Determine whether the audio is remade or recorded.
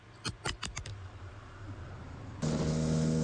recorded